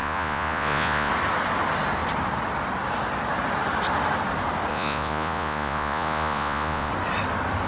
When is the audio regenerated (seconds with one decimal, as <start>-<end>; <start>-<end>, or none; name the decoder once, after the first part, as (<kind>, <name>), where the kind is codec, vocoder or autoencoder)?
0.0-1.1 (vocoder, Vocos); 4.7-6.9